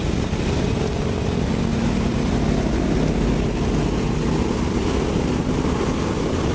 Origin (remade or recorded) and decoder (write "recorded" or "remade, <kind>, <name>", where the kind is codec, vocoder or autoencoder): recorded